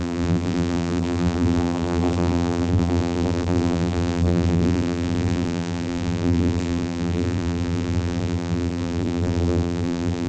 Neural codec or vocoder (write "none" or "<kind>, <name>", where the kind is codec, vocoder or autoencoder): vocoder, BigVGAN v2